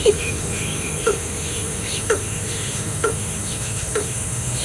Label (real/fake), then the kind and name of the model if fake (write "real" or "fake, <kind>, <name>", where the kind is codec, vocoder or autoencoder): fake, autoencoder, DAC-VAE